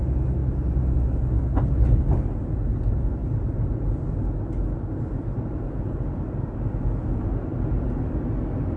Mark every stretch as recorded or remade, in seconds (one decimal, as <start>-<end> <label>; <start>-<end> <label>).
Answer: 0.0-8.8 recorded